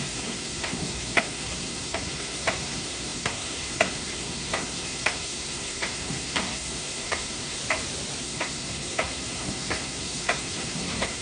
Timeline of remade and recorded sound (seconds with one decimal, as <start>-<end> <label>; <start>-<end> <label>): 0.0-7.6 remade; 7.6-8.2 recorded; 8.2-11.2 remade